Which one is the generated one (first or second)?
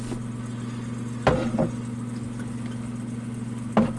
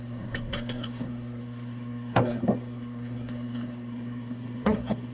second